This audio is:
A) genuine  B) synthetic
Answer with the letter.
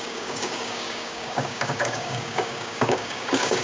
B